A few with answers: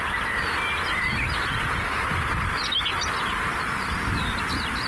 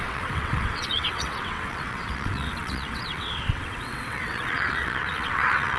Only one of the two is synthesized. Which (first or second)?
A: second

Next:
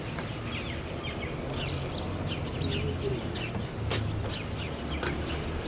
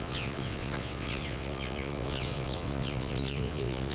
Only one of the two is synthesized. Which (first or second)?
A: second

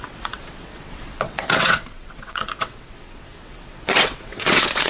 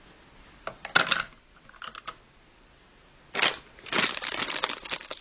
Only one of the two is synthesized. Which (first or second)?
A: first